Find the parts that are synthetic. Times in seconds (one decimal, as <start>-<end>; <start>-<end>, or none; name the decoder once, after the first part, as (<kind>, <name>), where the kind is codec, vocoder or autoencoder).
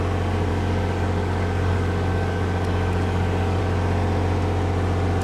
0.5-3.6 (codec, DAC)